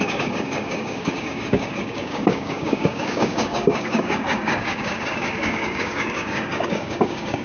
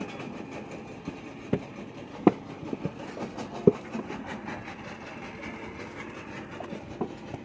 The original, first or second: second